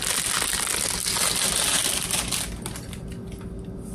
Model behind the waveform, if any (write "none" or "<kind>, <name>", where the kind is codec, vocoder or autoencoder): none